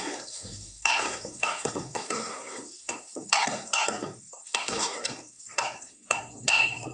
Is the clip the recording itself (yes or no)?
no